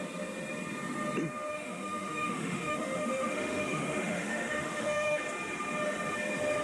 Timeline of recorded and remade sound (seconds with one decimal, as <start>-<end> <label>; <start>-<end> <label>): 0.0-1.5 recorded; 1.5-5.2 remade; 5.2-6.6 recorded